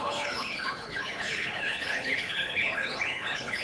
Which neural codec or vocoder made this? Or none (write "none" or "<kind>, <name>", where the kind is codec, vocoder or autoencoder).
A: codec, HILCodec